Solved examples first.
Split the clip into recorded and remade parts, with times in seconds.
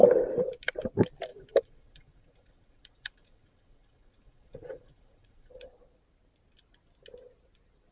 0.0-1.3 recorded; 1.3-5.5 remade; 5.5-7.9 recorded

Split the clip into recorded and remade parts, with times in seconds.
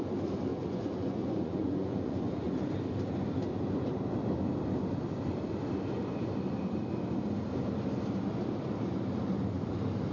0.0-0.5 recorded; 0.5-2.7 remade; 2.7-10.1 recorded